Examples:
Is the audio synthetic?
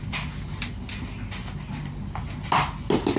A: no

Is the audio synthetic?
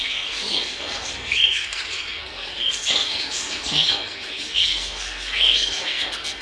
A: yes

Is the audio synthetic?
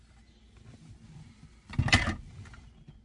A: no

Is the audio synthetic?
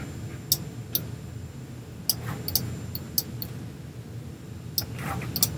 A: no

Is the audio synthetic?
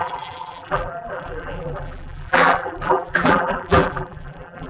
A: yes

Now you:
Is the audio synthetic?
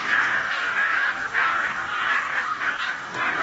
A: yes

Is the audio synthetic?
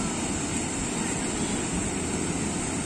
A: no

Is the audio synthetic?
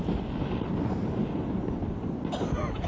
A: no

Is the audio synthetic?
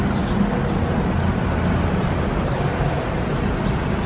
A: no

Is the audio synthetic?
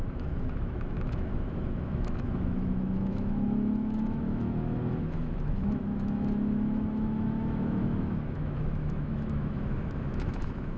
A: yes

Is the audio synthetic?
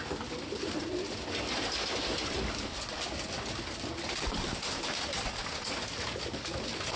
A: no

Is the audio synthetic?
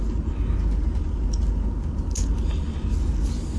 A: no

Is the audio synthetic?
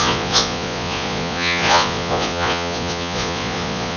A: yes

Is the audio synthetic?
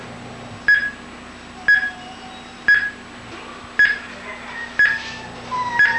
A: no